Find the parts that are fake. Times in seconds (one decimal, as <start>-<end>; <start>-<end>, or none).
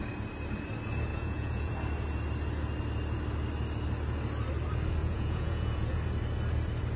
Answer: 1.1-1.7; 5.0-6.0